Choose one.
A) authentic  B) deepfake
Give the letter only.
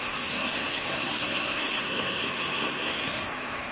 B